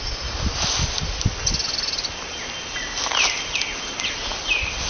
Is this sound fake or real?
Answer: real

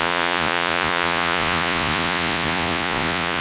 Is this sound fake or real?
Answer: fake